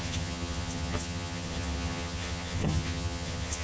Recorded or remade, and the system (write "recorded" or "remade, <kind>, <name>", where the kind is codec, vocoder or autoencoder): remade, vocoder, HiFi-GAN